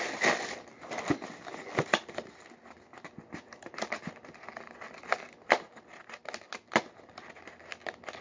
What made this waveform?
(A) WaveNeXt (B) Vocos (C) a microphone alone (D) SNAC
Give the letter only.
C